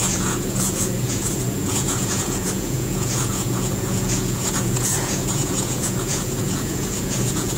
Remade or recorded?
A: remade